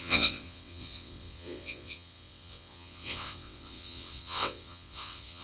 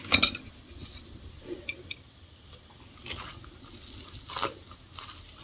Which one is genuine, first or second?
second